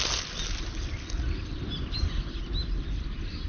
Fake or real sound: real